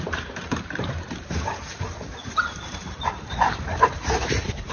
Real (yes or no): no